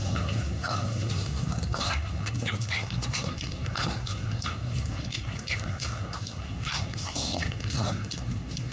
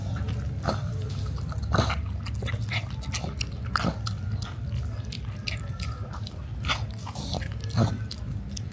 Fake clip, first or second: first